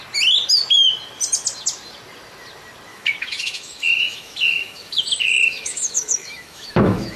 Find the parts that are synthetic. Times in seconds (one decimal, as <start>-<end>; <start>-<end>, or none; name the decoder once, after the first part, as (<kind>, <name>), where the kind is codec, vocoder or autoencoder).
2.9-7.2 (autoencoder, DAC-VAE)

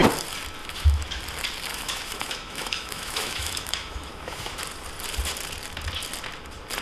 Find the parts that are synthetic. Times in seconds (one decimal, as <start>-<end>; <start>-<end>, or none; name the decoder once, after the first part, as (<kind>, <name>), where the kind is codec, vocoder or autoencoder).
0.6-1.2 (autoencoder, DAC-VAE); 1.7-4.6

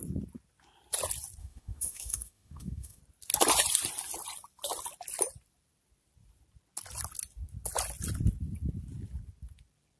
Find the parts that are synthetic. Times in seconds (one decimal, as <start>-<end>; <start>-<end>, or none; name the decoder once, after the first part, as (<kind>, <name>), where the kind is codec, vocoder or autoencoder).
1.4-3.0 (autoencoder, DAC-VAE)

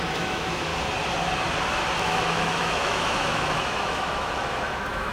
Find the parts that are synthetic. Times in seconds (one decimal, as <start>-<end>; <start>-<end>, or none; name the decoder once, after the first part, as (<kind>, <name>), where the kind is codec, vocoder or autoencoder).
0.0-0.7 (autoencoder, DAC-VAE); 2.0-5.1

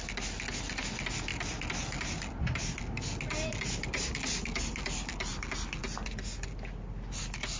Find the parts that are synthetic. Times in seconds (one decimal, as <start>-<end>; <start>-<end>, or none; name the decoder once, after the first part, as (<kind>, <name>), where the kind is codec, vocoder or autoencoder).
none